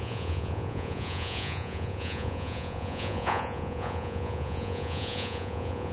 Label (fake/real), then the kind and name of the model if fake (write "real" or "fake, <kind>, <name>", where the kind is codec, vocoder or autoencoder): fake, vocoder, Vocos